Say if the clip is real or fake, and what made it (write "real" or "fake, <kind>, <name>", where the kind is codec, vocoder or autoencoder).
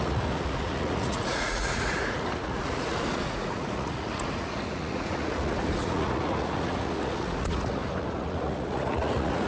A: fake, vocoder, Vocos